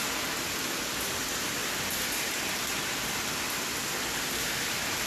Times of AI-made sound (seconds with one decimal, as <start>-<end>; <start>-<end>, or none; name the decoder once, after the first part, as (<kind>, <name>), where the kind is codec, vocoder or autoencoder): none